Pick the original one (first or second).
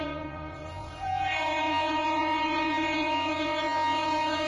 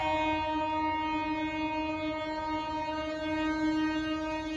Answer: second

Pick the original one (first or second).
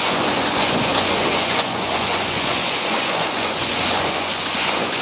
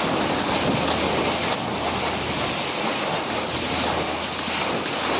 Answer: second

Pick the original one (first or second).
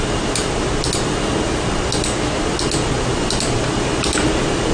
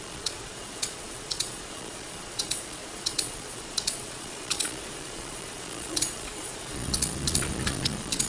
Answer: first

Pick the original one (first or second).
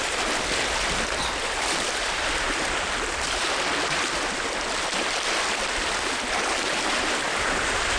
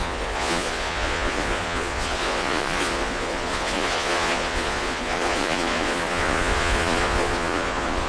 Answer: first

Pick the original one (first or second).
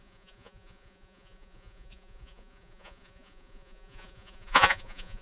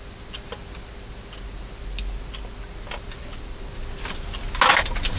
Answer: second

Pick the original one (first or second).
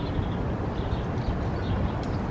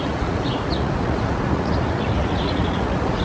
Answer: first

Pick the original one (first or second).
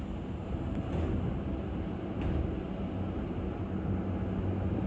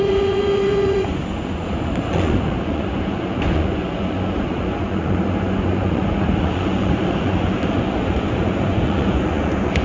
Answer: first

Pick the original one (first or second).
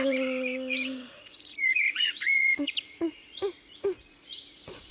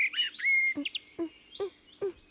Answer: second